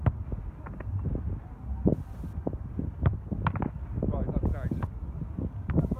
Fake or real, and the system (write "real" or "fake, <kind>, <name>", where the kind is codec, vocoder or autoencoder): real